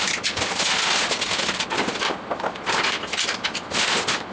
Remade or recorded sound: recorded